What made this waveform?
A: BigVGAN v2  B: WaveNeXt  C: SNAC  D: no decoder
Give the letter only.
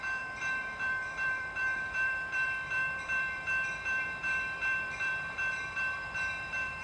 A